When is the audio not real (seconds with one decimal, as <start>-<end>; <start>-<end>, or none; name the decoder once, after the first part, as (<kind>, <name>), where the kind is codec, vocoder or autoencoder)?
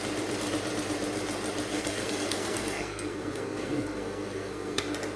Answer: 1.7-4.8 (codec, SNAC)